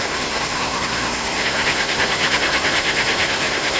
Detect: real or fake fake